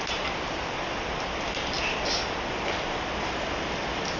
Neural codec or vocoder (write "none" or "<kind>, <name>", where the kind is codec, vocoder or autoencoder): none